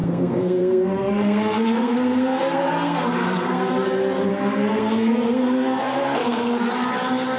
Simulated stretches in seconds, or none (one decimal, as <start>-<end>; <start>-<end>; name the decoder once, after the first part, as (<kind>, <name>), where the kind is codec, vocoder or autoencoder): 0.0-3.7 (codec, SNAC); 4.3-6.7